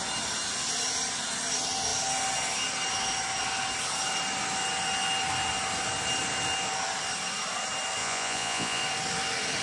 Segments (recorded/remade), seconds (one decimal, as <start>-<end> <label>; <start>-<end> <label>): 0.0-8.0 recorded; 8.0-8.8 remade; 8.8-9.6 recorded